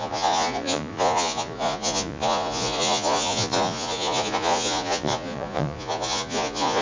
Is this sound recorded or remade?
remade